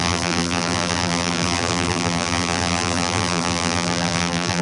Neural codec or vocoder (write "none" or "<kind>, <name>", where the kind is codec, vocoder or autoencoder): vocoder, BigVGAN v2